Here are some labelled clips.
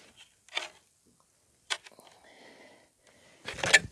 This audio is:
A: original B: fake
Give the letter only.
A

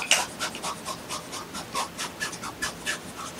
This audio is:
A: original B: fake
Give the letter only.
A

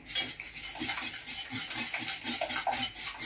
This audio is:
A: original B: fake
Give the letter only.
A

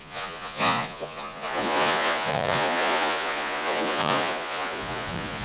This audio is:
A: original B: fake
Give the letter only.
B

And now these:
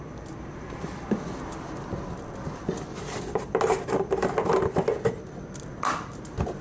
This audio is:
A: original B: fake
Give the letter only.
A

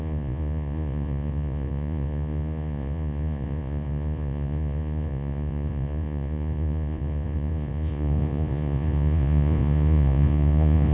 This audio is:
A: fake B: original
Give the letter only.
A